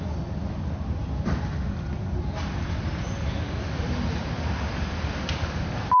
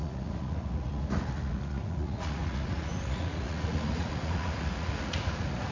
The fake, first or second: second